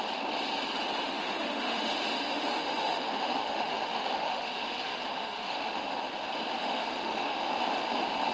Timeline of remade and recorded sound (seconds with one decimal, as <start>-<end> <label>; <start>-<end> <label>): 0.0-1.0 recorded; 1.0-5.9 remade; 5.9-6.6 recorded; 6.6-7.4 remade; 7.4-8.3 recorded